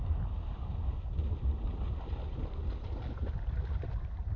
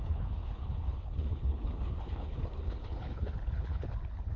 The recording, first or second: first